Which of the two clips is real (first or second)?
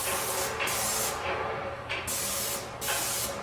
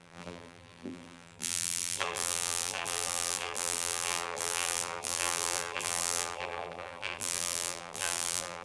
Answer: first